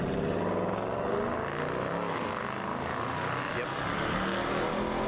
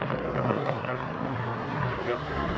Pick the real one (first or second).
first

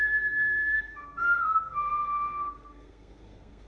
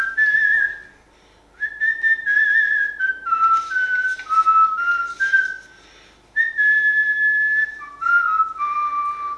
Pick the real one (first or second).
second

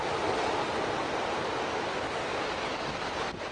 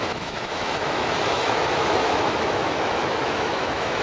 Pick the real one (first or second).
first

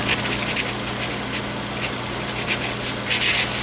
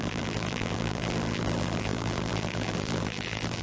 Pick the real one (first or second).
first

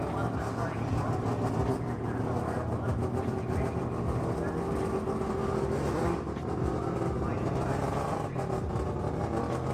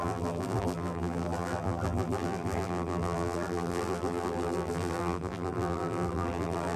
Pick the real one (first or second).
first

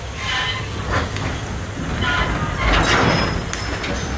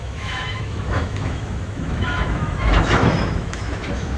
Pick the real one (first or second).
first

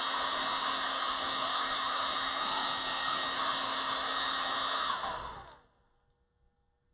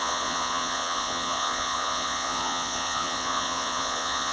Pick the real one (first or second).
first